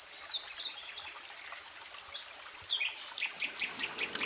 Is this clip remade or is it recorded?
recorded